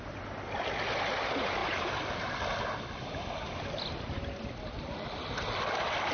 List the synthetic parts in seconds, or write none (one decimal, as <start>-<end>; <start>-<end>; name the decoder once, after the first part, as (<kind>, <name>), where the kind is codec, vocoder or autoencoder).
none